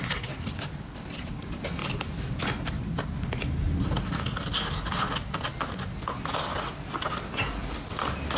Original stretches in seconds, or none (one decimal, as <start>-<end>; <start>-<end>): 0.0-1.8; 2.4-8.4